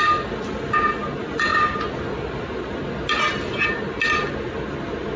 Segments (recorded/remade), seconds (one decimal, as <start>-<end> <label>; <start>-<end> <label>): 0.0-5.2 recorded